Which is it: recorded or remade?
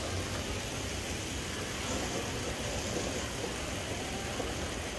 recorded